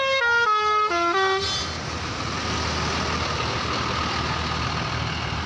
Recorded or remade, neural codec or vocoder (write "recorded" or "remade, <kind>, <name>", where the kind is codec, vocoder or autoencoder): recorded